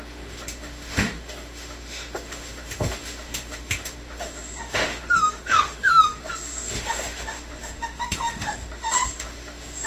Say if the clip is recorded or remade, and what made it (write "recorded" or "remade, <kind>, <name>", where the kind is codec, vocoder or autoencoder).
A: remade, autoencoder, DAC-VAE